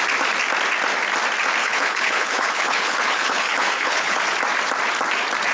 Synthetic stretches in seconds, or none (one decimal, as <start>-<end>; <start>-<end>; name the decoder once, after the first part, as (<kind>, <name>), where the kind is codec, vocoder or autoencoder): 1.6-4.2 (codec, HILCodec)